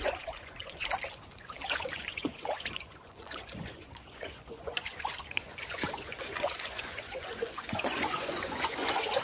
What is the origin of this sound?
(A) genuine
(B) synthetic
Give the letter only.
B